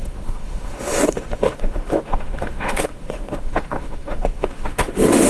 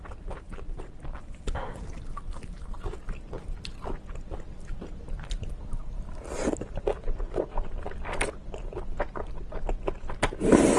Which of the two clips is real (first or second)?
second